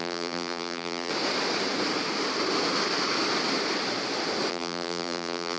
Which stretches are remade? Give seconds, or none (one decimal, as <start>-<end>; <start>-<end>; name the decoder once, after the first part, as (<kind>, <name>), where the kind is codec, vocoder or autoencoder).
0.0-1.1 (vocoder, BigVGAN v2); 4.5-5.6